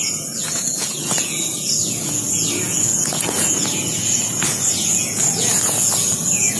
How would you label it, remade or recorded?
remade